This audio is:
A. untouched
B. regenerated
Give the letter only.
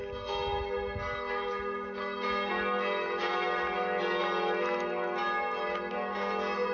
A